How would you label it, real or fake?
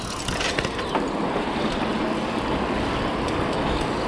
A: real